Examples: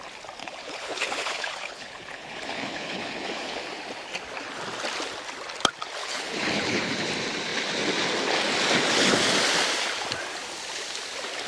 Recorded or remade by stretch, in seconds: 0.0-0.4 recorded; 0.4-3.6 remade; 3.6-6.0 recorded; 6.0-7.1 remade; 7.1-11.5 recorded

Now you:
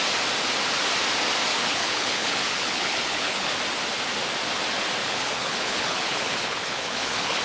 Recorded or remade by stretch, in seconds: 0.0-1.5 recorded; 1.5-3.5 remade; 3.5-5.0 recorded; 5.0-7.4 remade

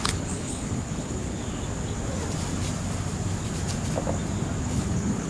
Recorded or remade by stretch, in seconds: 0.0-1.4 remade; 1.4-4.6 recorded; 4.6-5.3 remade

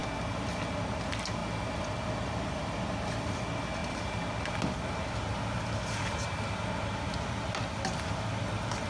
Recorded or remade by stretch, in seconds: 0.0-8.9 recorded

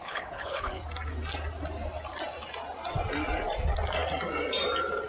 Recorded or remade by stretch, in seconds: 0.0-0.8 remade; 0.8-5.1 recorded

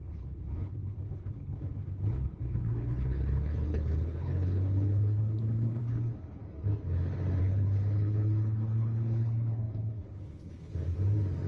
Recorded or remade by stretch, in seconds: 0.0-6.4 remade; 6.4-7.4 recorded; 7.4-10.7 remade; 10.7-11.5 recorded